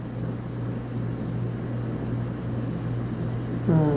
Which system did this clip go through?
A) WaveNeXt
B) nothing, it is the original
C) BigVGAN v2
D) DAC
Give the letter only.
B